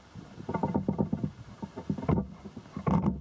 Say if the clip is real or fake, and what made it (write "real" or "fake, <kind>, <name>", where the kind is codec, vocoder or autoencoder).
real